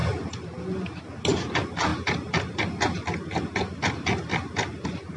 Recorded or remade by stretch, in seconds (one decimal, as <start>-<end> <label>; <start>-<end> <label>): 0.0-5.2 recorded